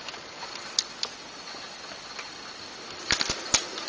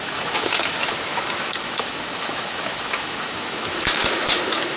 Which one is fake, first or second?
second